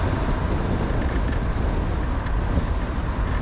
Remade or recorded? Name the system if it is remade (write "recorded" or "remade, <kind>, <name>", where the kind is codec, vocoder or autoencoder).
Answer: recorded